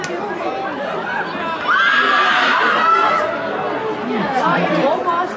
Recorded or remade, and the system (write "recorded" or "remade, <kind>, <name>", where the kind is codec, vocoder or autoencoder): recorded